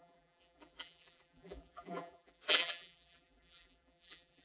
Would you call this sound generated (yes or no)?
yes